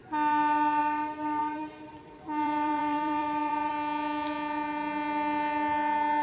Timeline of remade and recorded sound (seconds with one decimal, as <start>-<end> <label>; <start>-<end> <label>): 0.0-1.4 recorded; 1.4-3.7 remade; 3.7-6.2 recorded